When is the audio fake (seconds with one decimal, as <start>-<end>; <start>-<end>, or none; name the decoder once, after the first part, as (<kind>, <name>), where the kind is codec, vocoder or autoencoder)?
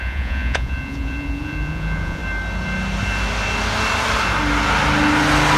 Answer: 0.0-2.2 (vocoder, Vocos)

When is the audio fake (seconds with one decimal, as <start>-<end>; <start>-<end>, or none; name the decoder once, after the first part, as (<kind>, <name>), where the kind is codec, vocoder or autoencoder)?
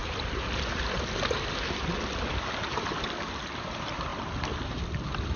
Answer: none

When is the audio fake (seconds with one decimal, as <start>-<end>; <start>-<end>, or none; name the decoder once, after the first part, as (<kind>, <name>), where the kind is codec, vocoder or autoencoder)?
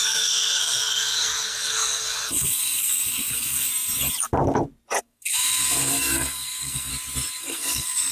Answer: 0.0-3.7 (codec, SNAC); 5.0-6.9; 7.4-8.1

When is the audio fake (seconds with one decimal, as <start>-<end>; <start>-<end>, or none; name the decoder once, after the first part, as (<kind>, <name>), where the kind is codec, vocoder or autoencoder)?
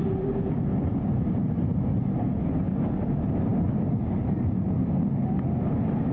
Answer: 1.4-2.2 (vocoder, BigVGAN v2)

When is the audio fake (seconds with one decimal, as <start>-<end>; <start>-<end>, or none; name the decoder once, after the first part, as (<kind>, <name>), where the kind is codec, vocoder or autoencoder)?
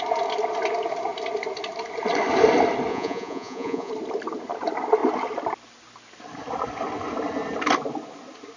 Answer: 2.9-3.9 (vocoder, Vocos)